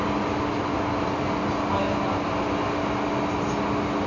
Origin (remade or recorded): recorded